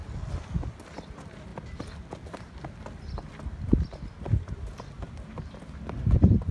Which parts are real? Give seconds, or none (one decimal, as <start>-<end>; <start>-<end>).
0.0-6.5